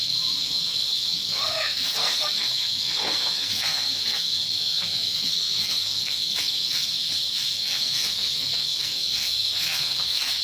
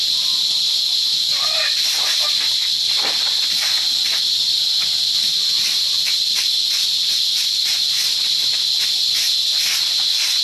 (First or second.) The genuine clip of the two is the second